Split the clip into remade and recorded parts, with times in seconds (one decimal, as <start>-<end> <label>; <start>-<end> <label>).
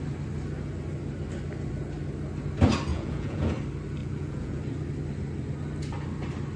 0.0-2.9 recorded; 2.9-3.5 remade; 3.5-4.0 recorded; 4.0-4.6 remade; 4.6-6.6 recorded